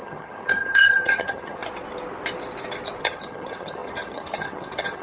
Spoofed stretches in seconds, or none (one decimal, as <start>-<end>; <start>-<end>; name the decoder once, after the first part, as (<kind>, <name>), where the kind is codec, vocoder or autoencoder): 0.0-1.6 (vocoder, HiFi-GAN); 3.0-5.0